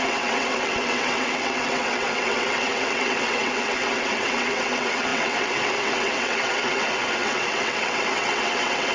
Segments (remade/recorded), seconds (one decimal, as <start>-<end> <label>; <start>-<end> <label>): 0.0-8.9 remade